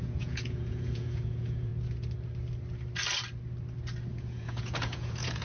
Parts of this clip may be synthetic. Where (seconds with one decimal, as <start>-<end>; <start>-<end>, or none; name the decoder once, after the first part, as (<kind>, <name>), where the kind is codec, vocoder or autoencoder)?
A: 0.0-1.7 (vocoder, Vocos); 4.1-5.4